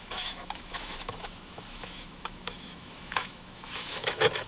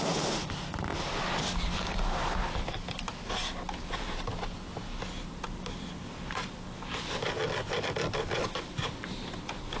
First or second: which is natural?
second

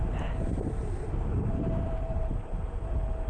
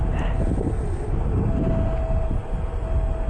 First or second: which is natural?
second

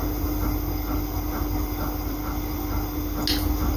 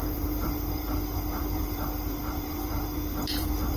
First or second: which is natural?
first